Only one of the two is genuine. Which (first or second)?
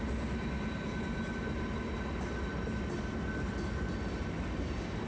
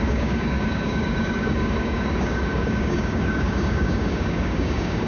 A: first